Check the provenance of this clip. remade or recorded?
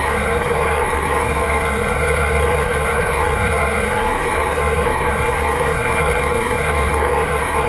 remade